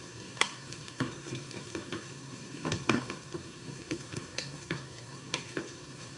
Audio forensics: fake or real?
fake